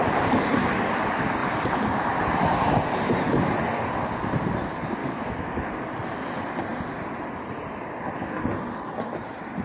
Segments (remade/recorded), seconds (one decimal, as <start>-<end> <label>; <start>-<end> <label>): 0.0-5.0 recorded; 5.0-5.7 remade; 5.7-9.6 recorded